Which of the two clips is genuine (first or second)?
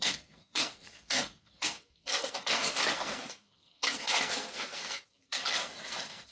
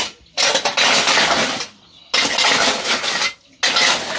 second